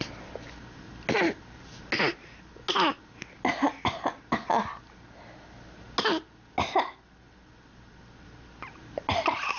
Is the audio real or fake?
real